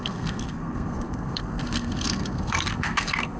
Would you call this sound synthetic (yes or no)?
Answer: yes